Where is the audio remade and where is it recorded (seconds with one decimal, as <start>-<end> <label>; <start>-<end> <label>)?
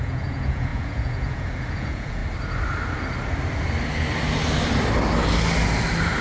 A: 0.0-2.2 remade; 2.2-6.2 recorded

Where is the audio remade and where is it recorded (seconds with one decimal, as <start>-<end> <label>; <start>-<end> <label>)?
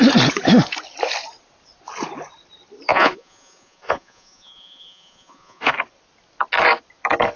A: 0.0-2.9 recorded; 2.9-5.7 remade; 5.7-7.4 recorded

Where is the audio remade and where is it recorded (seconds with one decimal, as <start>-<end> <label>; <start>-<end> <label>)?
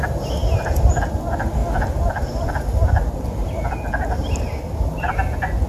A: 0.0-5.7 recorded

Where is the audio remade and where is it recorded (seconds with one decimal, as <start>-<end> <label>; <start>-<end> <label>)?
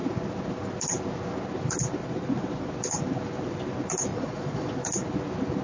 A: 0.0-2.0 recorded; 2.0-2.7 remade; 2.7-4.1 recorded; 4.1-4.7 remade; 4.7-5.6 recorded